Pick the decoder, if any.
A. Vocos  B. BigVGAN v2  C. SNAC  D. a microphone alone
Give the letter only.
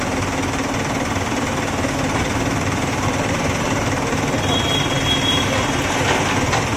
B